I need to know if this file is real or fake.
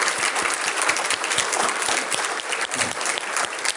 fake